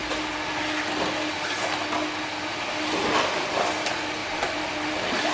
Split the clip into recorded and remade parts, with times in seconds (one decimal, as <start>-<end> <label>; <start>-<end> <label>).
0.0-4.2 recorded; 4.2-5.3 remade